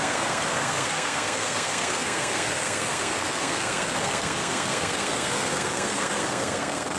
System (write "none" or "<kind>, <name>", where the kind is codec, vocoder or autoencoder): codec, SNAC